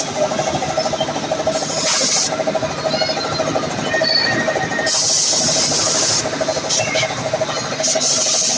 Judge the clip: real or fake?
real